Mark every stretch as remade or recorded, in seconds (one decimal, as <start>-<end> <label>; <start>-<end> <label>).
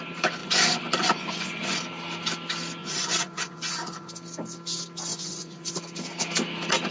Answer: 0.0-0.4 recorded; 0.4-1.8 remade; 1.8-2.8 recorded; 2.8-4.1 remade; 4.1-5.1 recorded; 5.1-5.7 remade; 5.7-6.9 recorded